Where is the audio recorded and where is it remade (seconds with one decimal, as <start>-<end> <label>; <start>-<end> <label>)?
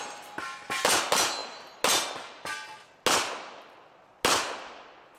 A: 0.0-5.2 recorded